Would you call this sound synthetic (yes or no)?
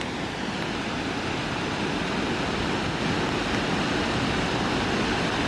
no